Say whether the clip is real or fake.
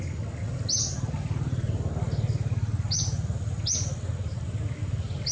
real